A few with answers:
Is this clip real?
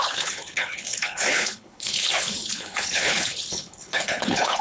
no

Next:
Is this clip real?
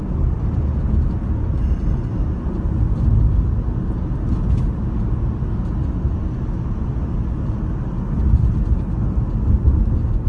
yes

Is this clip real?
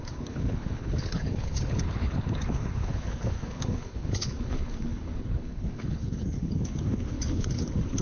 no